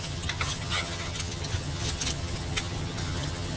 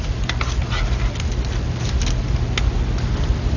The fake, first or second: first